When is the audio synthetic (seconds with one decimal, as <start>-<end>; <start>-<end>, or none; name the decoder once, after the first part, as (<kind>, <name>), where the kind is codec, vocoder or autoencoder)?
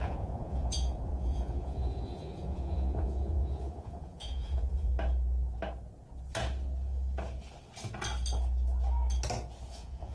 0.0-4.9 (vocoder, Vocos); 9.7-10.1